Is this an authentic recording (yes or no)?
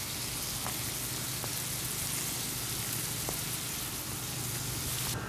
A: yes